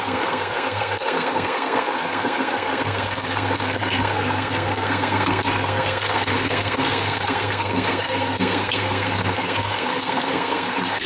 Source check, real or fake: fake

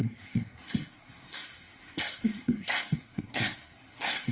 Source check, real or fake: fake